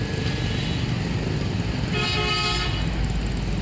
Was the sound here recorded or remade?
recorded